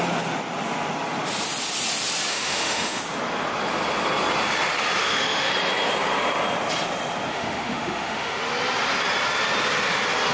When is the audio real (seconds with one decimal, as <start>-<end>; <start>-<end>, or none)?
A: 0.0-2.3; 3.0-5.0; 5.5-7.3; 8.4-10.3